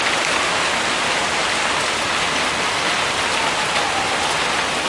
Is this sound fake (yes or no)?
no